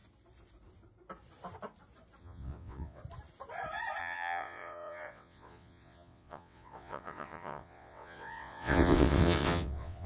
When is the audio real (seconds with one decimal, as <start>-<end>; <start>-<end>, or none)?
0.0-2.2; 3.0-4.0